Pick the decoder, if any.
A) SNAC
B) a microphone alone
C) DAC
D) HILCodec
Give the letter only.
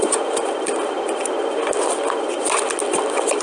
B